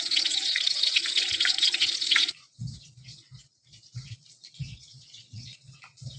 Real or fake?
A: fake